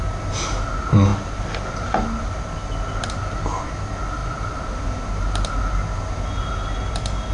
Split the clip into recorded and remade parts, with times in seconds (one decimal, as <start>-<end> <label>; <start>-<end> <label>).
0.0-7.3 recorded